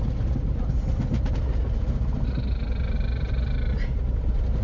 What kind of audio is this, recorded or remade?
recorded